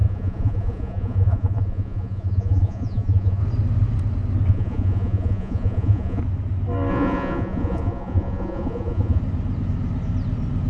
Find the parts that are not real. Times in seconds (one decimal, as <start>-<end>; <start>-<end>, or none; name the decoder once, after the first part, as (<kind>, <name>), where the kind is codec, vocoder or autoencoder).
0.0-3.4 (vocoder, Vocos); 4.5-6.2; 6.9-9.2